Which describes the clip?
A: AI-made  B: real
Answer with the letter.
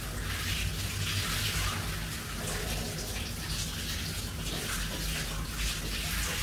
B